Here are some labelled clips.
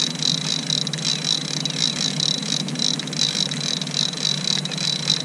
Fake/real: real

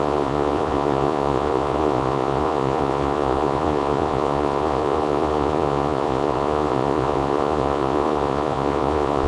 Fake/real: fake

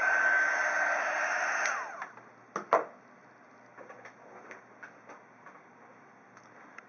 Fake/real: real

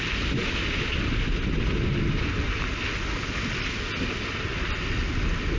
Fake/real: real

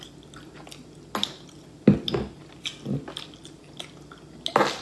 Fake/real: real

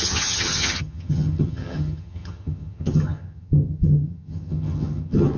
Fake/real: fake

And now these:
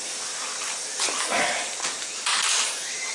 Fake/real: real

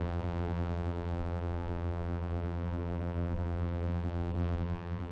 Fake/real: fake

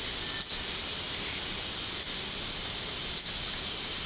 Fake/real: real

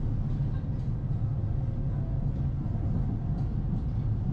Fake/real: real